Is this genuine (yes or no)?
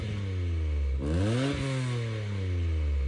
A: yes